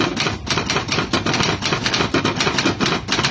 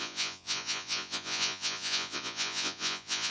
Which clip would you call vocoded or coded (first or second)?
second